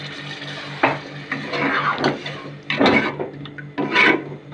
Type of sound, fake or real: real